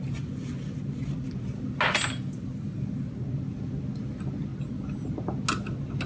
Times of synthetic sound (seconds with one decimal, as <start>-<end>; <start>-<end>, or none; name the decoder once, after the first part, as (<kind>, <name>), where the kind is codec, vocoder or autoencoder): none